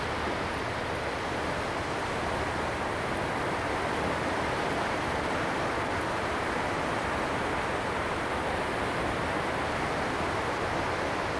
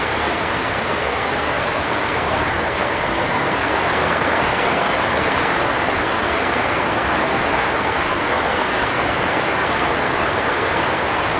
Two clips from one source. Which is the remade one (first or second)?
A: second